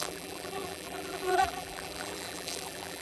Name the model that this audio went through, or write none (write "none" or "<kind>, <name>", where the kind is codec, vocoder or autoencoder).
vocoder, BigVGAN v2